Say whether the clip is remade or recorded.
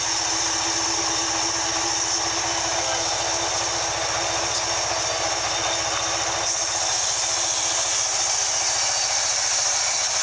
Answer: recorded